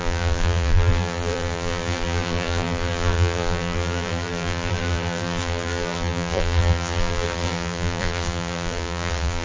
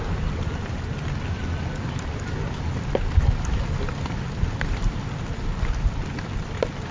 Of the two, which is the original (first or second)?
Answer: second